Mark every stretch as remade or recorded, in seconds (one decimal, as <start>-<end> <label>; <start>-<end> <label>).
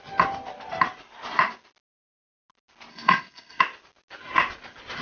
0.0-2.9 recorded; 2.9-3.6 remade; 3.6-5.0 recorded